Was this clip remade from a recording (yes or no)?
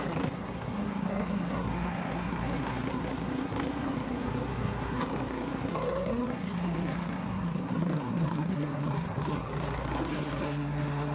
yes